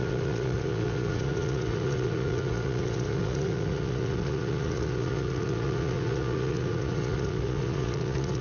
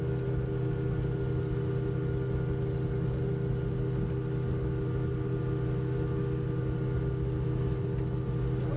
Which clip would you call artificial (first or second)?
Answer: first